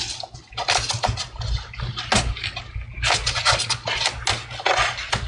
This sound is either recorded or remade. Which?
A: recorded